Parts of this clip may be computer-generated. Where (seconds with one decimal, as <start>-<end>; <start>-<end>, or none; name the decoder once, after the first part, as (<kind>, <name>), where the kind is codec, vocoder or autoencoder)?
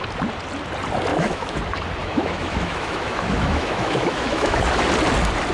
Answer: 1.1-1.6 (autoencoder, DAC-VAE); 2.0-4.6